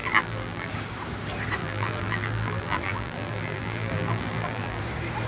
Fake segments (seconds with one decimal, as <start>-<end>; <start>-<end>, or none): 0.0-0.7; 1.6-4.8